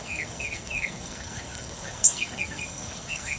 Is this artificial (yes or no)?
yes